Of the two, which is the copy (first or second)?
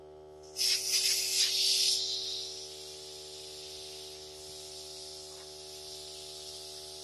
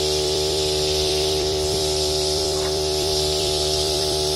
second